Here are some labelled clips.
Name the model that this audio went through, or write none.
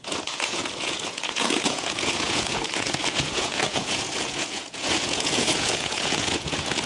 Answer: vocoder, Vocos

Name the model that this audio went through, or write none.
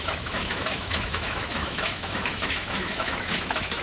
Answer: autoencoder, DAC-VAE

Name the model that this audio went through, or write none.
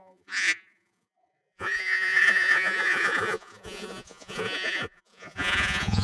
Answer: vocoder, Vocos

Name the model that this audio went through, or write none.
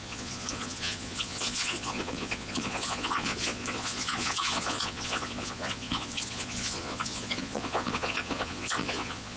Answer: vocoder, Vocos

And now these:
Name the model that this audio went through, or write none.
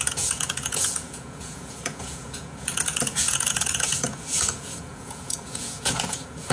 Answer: vocoder, Vocos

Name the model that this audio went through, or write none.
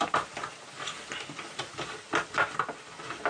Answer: none